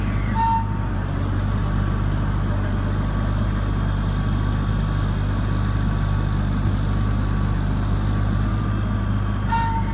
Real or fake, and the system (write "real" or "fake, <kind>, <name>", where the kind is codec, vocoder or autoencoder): real